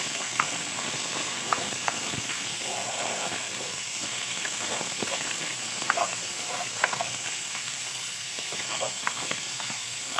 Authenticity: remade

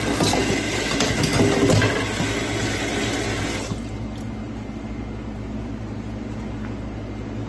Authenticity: recorded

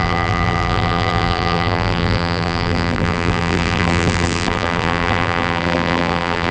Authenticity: remade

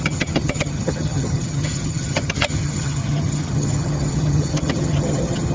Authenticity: remade